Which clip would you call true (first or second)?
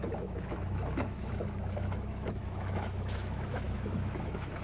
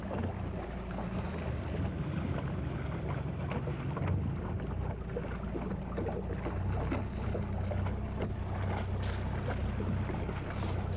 second